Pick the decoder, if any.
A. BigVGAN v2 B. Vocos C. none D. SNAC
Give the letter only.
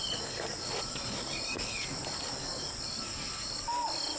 C